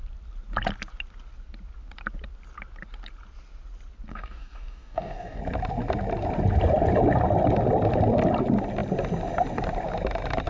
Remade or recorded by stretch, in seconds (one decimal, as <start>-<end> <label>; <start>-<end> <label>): 0.0-4.1 recorded; 4.1-5.4 remade; 5.4-10.5 recorded